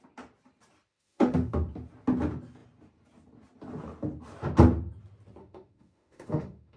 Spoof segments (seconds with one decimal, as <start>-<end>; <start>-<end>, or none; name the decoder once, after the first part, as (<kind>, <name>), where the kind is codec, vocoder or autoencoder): 0.9-1.5 (autoencoder, DAC-VAE); 5.4-6.8